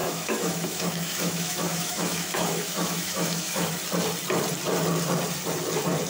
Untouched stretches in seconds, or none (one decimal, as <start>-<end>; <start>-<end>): 3.7-6.1